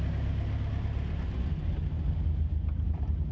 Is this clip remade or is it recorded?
recorded